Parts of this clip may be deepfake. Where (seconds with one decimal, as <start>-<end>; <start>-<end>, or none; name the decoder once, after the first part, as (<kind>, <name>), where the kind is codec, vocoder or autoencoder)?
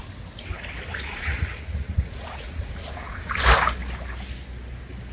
0.9-3.4 (vocoder, Vocos)